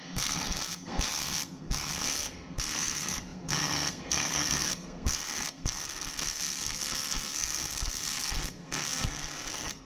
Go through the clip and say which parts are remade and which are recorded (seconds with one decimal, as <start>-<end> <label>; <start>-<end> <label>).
0.0-9.8 remade